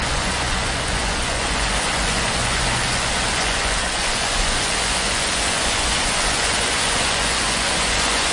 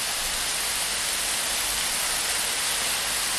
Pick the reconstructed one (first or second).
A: first